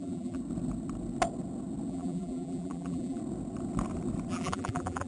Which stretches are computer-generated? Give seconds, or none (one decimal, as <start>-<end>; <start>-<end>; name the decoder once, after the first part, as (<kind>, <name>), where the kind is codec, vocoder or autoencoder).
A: 0.0-0.4 (vocoder, BigVGAN v2); 1.9-3.2; 4.3-5.1

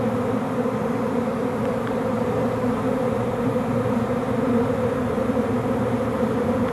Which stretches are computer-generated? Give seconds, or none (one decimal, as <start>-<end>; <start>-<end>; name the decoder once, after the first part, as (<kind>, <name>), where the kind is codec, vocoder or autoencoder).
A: 1.4-4.1 (vocoder, BigVGAN v2)

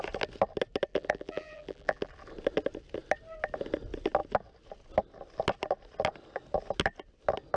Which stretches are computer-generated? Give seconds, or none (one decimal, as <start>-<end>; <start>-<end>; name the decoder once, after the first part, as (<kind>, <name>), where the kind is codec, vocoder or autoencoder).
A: 0.9-2.1 (vocoder, BigVGAN v2)

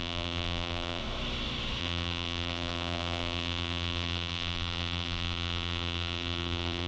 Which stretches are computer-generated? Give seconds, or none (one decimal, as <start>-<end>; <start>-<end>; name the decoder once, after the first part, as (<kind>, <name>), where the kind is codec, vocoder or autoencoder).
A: 0.0-1.0 (vocoder, BigVGAN v2); 1.8-6.9

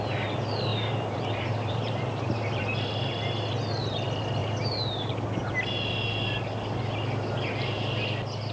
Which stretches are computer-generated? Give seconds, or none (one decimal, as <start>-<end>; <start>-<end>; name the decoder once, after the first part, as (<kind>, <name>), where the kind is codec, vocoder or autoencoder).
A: 0.7-2.6 (vocoder, BigVGAN v2)

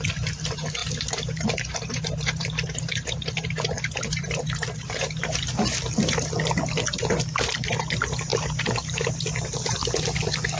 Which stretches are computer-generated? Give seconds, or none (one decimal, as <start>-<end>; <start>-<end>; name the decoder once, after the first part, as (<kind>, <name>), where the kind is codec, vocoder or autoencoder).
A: 0.8-5.2 (vocoder, BigVGAN v2); 8.3-9.2

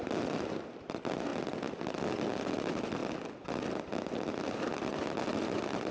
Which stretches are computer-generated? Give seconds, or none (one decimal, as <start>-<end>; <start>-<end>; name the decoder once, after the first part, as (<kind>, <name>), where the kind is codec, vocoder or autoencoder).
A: 0.0-1.3 (vocoder, BigVGAN v2); 2.5-3.0; 3.6-5.9

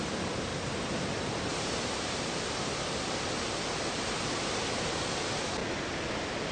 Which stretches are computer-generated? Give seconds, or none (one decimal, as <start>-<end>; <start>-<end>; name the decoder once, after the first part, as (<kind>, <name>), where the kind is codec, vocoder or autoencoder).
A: 0.5-4.4 (vocoder, BigVGAN v2)